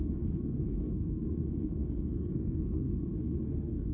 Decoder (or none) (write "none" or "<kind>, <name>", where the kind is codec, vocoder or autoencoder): codec, SNAC